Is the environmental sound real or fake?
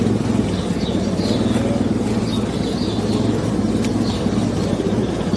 real